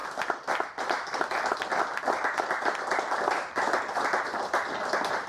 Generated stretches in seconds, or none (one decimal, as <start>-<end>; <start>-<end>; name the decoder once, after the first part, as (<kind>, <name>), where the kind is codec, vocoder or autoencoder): 2.4-5.3 (vocoder, BigVGAN v2)